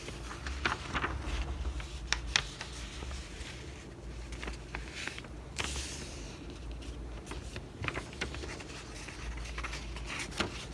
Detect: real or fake real